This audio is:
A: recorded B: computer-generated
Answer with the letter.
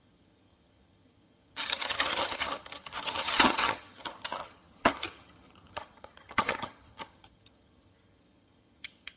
B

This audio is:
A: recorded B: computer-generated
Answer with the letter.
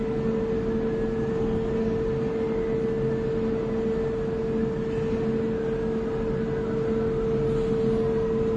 A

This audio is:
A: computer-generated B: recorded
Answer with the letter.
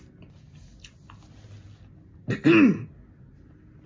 B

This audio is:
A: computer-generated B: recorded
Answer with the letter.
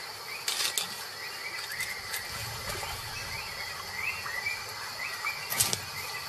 B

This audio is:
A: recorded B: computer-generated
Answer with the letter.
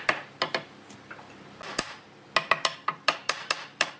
A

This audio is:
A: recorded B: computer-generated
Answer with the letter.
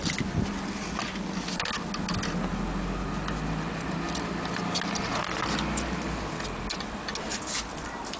A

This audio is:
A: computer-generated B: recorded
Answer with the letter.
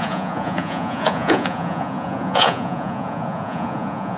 A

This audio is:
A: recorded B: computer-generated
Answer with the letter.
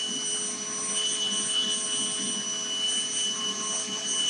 A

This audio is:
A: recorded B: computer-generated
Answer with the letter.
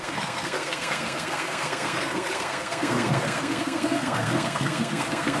B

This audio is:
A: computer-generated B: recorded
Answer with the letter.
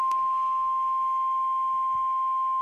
A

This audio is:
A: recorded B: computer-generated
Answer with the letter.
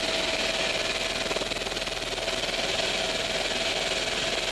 A